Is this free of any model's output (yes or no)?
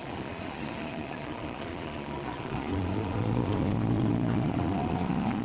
no